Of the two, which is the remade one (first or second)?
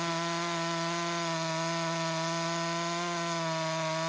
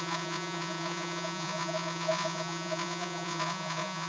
second